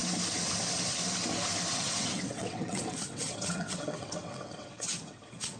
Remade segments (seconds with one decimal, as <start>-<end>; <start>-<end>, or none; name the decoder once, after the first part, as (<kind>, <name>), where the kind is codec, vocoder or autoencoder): 1.7-5.6 (vocoder, WaveNeXt)